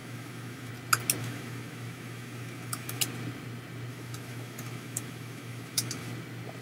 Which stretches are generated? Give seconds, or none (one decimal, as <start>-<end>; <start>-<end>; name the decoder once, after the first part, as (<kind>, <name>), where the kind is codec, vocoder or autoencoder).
0.0-0.7 (autoencoder, DAC-VAE); 1.2-3.0; 3.9-6.1